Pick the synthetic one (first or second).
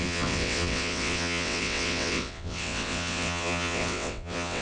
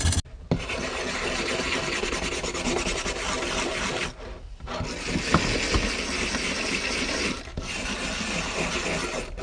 first